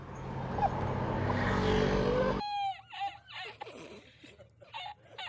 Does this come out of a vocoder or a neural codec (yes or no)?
no